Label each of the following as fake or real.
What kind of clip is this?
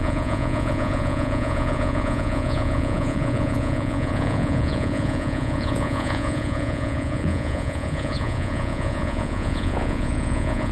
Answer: fake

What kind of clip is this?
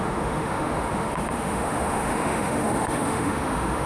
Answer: fake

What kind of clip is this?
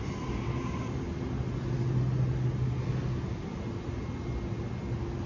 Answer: real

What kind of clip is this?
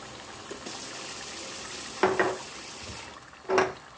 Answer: real